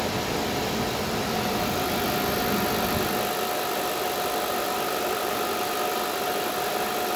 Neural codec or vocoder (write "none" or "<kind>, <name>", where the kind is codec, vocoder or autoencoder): none